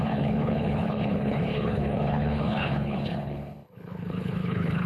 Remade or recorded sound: remade